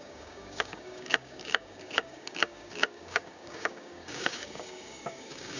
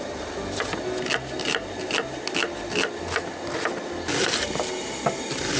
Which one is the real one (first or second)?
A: second